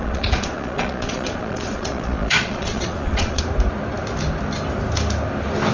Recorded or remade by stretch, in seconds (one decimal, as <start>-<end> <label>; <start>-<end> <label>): 0.0-3.4 remade; 3.4-5.7 recorded